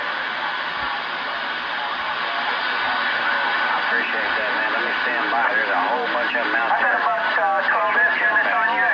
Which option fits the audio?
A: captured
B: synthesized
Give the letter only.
A